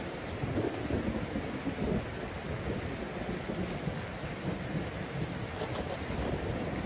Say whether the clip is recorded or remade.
recorded